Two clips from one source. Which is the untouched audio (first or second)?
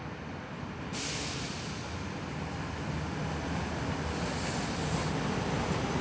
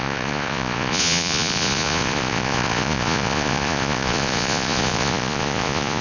first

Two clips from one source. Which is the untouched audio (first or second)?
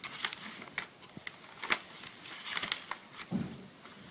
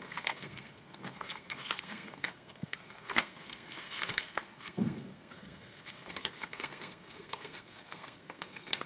first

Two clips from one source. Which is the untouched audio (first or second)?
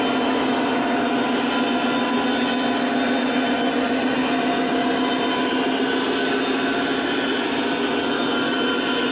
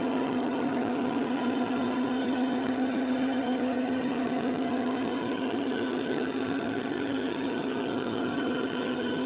first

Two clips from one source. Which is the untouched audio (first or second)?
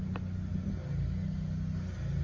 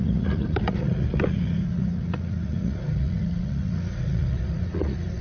first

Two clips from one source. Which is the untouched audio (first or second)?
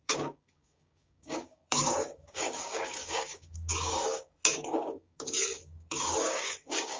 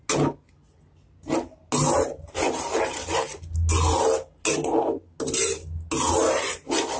second